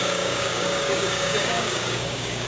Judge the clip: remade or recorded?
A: remade